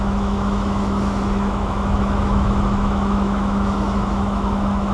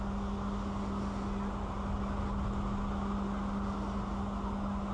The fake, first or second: first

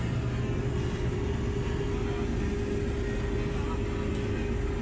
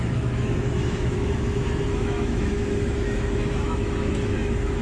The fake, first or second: second